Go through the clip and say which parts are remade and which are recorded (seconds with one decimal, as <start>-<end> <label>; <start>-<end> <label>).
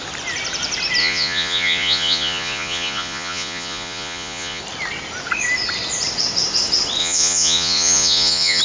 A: 0.0-1.0 recorded; 1.0-4.6 remade; 4.6-7.0 recorded; 7.0-8.6 remade